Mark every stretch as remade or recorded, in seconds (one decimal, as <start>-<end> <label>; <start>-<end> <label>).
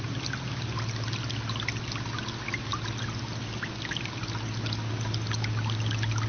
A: 0.0-6.3 recorded